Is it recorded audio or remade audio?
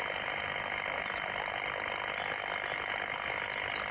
recorded